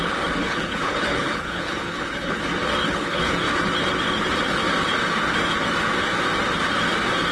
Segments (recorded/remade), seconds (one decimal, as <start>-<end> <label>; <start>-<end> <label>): 0.0-0.4 recorded; 0.4-2.4 remade; 2.4-2.8 recorded; 2.8-3.3 remade; 3.3-7.3 recorded